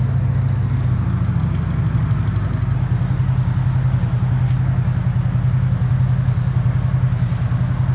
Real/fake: real